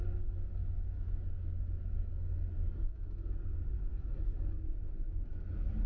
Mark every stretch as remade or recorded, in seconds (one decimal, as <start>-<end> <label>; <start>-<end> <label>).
0.0-5.9 recorded